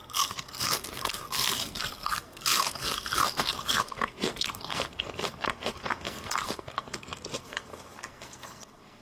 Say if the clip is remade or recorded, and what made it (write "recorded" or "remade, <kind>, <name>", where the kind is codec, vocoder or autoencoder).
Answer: remade, codec, SNAC